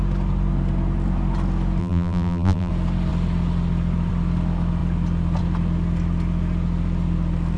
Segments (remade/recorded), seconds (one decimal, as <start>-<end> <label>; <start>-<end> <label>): 0.0-1.8 recorded; 1.8-2.7 remade; 2.7-7.6 recorded